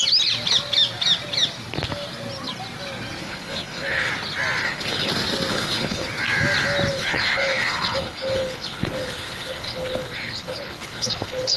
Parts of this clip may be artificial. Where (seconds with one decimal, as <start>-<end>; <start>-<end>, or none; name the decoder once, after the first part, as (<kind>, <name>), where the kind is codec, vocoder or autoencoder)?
3.2-4.1 (codec, HILCodec); 4.6-5.1; 5.5-6.1; 6.9-11.6